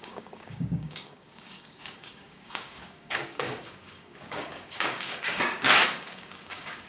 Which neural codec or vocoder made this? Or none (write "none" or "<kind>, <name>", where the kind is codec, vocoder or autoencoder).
codec, DAC